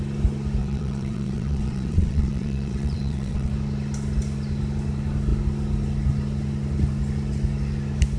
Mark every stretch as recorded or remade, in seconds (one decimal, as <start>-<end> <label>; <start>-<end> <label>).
0.0-0.6 recorded; 0.6-3.5 remade; 3.5-8.2 recorded